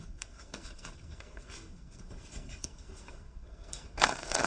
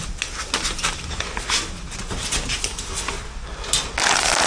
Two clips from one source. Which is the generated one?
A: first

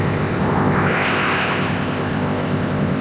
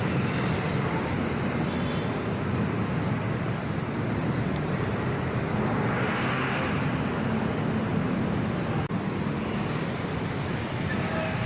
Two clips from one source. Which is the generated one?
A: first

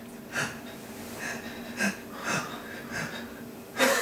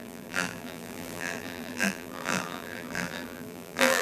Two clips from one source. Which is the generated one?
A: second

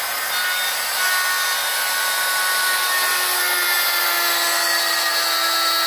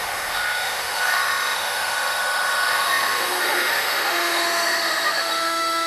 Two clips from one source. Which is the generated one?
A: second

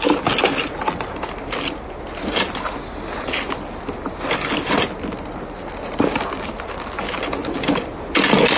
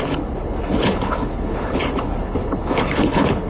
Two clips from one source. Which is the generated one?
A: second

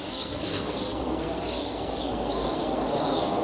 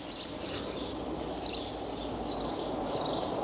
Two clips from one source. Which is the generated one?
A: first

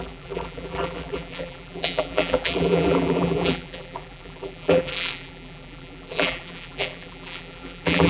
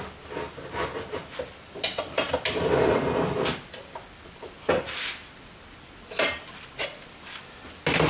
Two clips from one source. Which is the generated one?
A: first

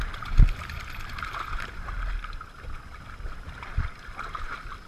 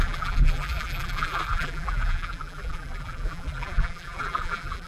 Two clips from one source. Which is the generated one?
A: second